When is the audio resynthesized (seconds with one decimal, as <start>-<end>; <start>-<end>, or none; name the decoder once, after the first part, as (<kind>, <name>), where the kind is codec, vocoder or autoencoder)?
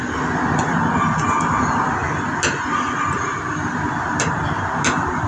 none